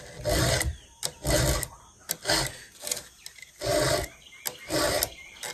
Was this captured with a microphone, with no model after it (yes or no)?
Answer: yes